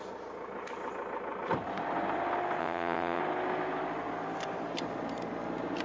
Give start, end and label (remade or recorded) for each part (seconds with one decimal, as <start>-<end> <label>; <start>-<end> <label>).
0.0-2.6 recorded; 2.6-3.2 remade; 3.2-5.8 recorded